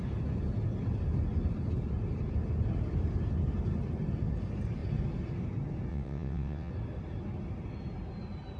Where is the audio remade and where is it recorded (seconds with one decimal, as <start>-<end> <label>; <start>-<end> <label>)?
0.0-5.9 recorded; 5.9-6.7 remade; 6.7-8.6 recorded